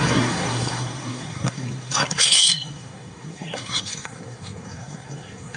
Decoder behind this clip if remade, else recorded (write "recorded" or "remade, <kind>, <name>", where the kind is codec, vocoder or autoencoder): remade, codec, SNAC